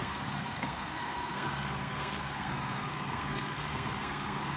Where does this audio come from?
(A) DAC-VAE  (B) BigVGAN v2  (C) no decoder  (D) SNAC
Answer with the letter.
D